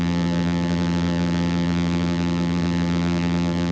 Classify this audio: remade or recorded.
remade